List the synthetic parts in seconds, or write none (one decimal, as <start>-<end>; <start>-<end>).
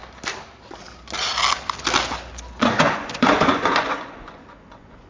2.6-5.1